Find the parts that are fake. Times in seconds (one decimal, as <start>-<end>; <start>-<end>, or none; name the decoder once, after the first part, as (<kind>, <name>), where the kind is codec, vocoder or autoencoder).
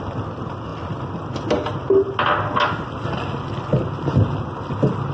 none